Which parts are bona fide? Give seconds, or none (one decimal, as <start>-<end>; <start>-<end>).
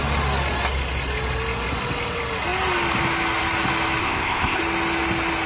0.0-4.0; 4.6-5.5